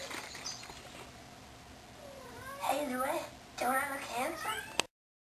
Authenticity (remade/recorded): recorded